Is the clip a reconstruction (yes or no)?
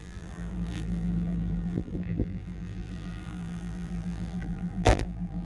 yes